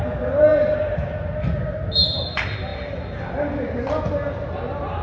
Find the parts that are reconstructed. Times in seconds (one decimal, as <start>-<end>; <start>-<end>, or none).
none